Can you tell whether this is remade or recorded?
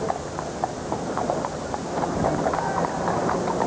recorded